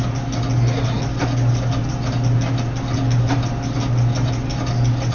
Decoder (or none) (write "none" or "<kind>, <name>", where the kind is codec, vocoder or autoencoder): none